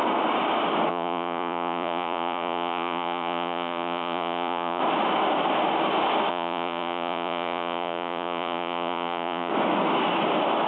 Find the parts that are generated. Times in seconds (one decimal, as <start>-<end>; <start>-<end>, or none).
0.9-4.8; 6.3-9.5